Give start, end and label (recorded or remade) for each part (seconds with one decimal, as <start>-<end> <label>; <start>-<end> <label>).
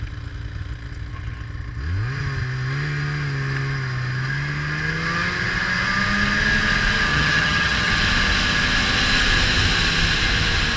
0.0-7.1 recorded; 7.1-7.9 remade; 7.9-10.8 recorded